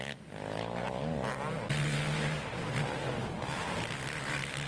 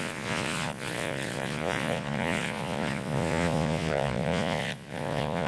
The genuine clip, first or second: first